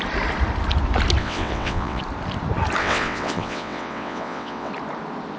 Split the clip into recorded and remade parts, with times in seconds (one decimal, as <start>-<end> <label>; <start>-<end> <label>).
0.0-1.2 recorded; 1.2-2.0 remade; 2.0-2.8 recorded; 2.8-4.7 remade; 4.7-5.4 recorded